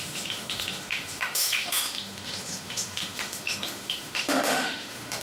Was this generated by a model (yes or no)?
yes